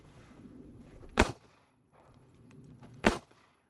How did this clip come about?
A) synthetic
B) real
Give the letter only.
A